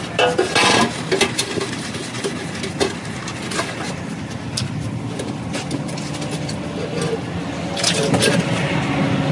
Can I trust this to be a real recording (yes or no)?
yes